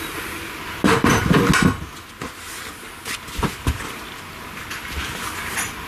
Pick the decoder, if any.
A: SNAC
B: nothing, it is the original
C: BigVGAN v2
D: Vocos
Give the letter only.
B